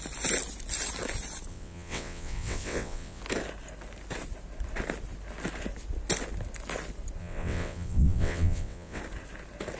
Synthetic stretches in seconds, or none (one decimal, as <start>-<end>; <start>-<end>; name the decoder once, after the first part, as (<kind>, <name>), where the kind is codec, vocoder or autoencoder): 1.5-3.2 (vocoder, WaveNeXt); 7.2-9.0